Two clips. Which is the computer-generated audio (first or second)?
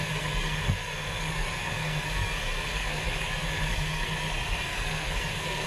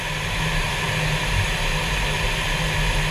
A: first